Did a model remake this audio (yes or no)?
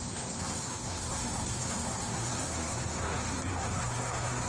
yes